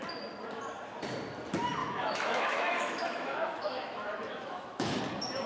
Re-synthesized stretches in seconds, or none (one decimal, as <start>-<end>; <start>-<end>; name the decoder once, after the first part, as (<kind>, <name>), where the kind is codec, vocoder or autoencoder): 1.8-5.0 (autoencoder, DAC-VAE)